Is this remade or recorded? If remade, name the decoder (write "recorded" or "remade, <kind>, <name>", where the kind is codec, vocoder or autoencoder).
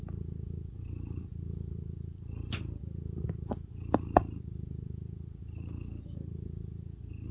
recorded